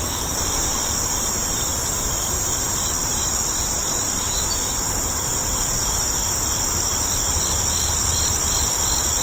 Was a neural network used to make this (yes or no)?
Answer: yes